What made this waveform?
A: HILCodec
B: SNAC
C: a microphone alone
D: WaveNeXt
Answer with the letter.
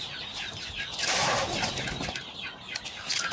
C